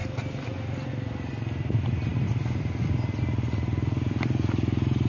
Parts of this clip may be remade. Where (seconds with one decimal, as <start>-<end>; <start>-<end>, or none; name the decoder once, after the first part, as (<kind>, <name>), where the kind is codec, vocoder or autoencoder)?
none